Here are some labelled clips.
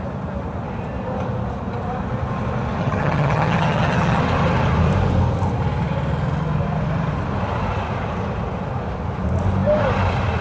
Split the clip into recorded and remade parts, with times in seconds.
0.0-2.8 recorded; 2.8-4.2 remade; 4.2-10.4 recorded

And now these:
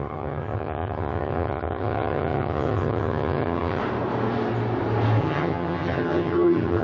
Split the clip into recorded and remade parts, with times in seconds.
0.0-3.8 remade; 3.8-5.2 recorded; 5.2-6.8 remade

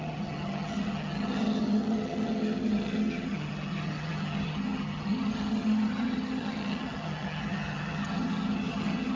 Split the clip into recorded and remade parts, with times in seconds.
0.0-9.2 remade

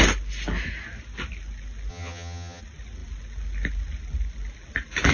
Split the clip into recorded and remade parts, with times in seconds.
0.0-1.9 recorded; 1.9-2.6 remade; 2.6-5.1 recorded

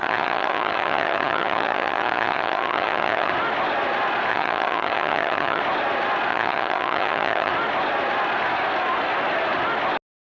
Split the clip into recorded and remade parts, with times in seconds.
0.0-3.3 remade; 3.3-4.3 recorded; 4.3-5.6 remade; 5.6-6.3 recorded; 6.3-7.5 remade; 7.5-10.3 recorded